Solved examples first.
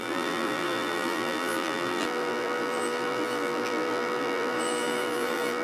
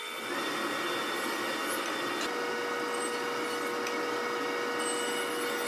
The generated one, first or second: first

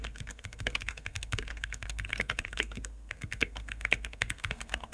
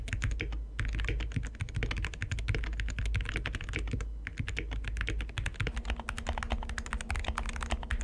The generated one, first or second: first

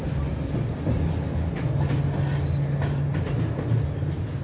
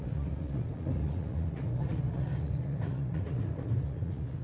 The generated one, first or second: second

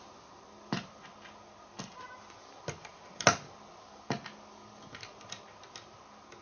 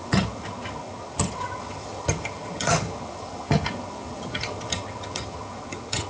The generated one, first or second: second